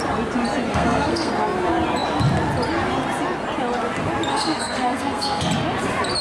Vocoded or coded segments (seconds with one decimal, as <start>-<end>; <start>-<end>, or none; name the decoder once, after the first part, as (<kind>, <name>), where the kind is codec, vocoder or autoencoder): 0.7-1.3 (codec, SNAC); 4.3-5.5